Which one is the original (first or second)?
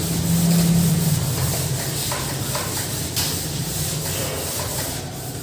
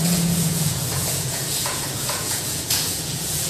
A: first